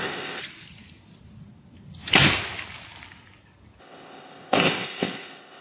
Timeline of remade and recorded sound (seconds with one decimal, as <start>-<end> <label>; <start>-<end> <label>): 0.0-0.4 remade; 0.4-3.8 recorded; 3.8-5.6 remade